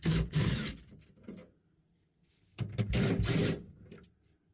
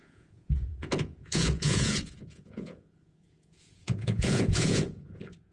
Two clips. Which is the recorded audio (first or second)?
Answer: first